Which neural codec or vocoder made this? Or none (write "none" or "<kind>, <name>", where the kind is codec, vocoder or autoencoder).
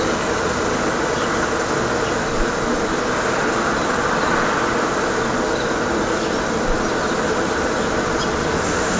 none